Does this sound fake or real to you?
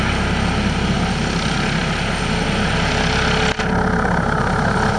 real